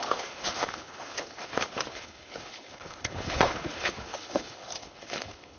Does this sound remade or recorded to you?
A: remade